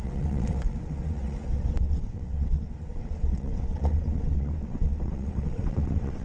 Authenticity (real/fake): fake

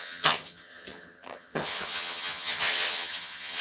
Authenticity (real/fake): fake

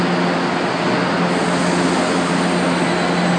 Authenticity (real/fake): real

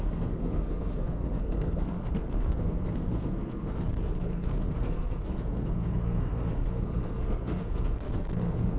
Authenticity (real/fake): fake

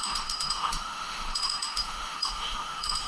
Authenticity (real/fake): fake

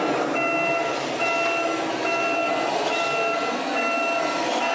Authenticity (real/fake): real